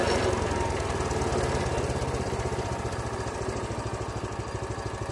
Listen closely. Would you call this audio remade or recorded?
recorded